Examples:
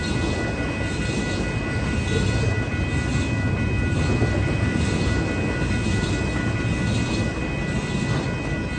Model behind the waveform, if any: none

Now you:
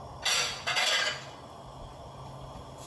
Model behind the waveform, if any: none